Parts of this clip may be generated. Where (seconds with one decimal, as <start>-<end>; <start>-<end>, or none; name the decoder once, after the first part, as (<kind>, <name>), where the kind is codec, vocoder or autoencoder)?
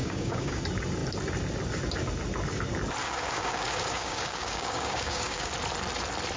0.0-0.6 (codec, DAC); 3.0-5.5